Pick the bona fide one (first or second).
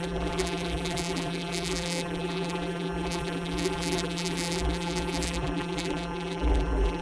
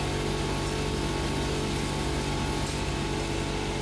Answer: second